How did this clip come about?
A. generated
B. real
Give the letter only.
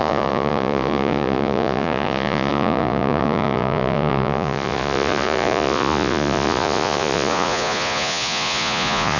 A